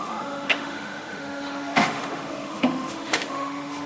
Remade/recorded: remade